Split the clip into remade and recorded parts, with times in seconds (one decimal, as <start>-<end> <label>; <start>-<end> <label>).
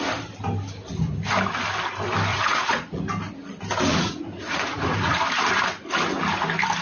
0.0-2.3 recorded; 2.3-3.0 remade; 3.0-3.9 recorded; 3.9-5.2 remade; 5.2-6.8 recorded